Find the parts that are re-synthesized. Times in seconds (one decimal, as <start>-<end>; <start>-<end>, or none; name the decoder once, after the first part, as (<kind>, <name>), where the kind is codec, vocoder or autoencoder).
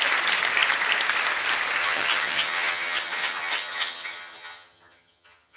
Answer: 1.8-5.6 (vocoder, HiFi-GAN)